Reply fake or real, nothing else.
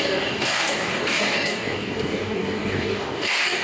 fake